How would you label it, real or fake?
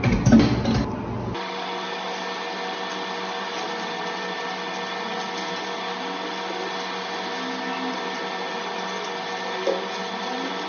real